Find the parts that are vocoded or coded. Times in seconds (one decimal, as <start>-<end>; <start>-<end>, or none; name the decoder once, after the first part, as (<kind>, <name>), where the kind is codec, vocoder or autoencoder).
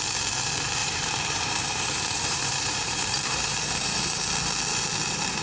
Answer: 0.8-4.0 (vocoder, BigVGAN v2)